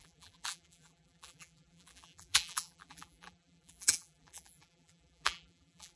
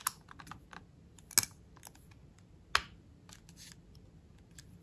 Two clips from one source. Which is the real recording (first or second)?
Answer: second